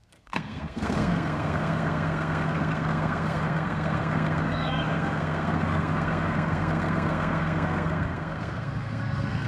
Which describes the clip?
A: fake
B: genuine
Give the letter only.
A